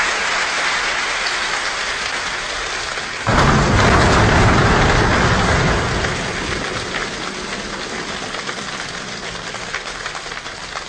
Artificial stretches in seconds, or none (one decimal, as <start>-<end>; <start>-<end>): none